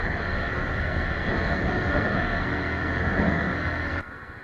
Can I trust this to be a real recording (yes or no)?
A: no